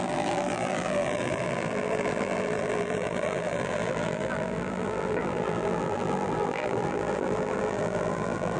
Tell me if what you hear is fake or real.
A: fake